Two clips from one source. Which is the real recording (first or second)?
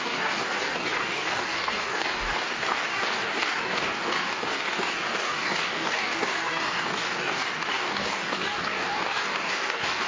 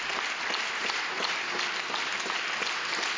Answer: second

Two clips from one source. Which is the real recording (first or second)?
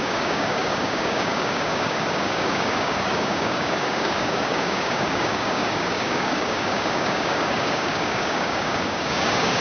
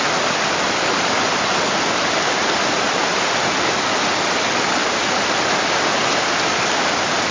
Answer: second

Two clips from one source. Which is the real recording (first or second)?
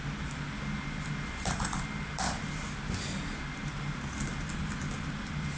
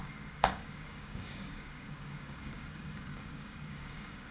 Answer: first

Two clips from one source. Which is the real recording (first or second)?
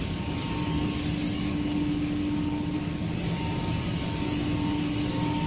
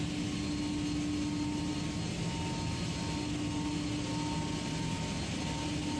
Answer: second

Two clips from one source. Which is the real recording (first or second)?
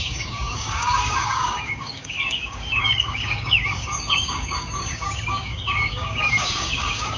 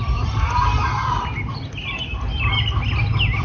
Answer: second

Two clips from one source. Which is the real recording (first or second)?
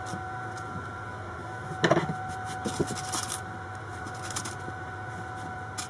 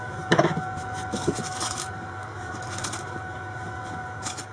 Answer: first